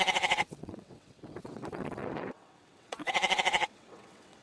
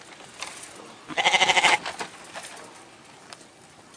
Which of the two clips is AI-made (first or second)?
first